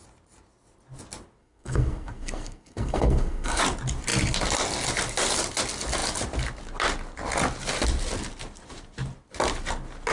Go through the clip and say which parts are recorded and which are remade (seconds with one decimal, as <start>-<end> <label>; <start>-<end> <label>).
0.0-1.4 recorded; 1.4-3.6 remade; 3.6-10.1 recorded